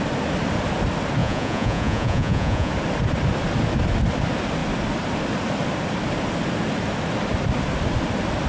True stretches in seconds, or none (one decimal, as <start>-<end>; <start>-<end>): 0.0-1.2; 2.7-8.5